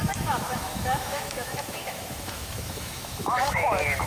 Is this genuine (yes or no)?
no